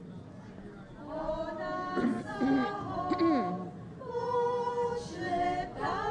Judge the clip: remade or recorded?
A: recorded